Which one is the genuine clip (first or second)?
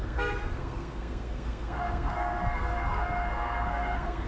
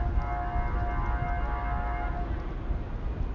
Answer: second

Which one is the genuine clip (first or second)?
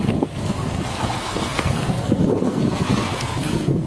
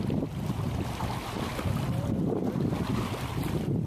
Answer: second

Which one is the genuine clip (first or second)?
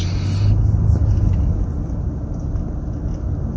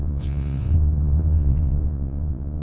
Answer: first